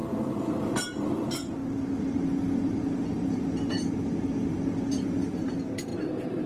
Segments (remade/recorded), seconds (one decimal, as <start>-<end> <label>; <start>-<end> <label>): 0.0-6.5 recorded